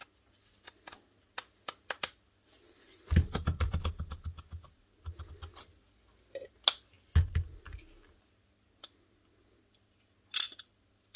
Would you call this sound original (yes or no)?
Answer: yes